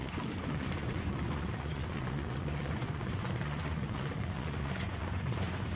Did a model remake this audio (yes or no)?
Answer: yes